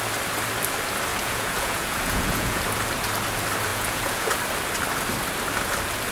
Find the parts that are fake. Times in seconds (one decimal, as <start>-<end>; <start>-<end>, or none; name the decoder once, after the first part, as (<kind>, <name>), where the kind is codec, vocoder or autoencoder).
1.1-2.6 (vocoder, Vocos); 3.7-4.4